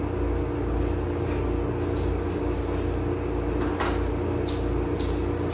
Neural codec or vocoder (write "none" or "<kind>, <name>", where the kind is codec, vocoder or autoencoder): none